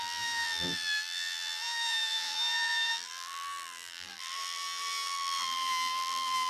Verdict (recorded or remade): remade